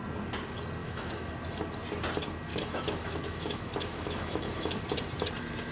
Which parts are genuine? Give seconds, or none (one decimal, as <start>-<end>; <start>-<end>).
0.0-0.8; 1.3-2.5; 4.8-5.7